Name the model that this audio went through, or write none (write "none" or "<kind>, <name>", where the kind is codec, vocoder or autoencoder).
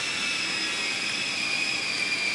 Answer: none